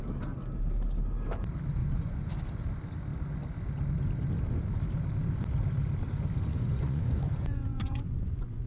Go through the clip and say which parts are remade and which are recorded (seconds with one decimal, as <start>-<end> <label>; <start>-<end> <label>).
0.0-1.8 recorded; 1.8-2.3 remade; 2.3-6.5 recorded; 6.5-8.7 remade